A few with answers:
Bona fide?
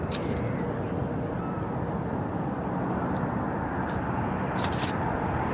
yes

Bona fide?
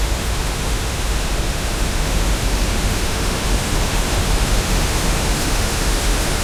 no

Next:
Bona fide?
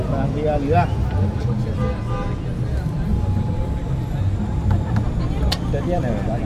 yes